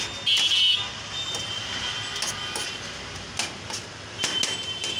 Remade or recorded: recorded